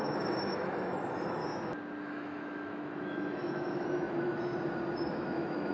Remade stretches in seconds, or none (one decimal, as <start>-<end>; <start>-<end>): 0.0-1.4; 2.1-4.5; 5.1-5.7